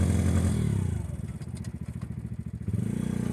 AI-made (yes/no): no